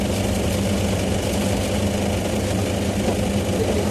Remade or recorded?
recorded